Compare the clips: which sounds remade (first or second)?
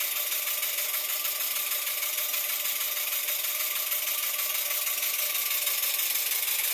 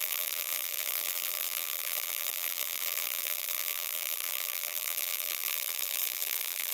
second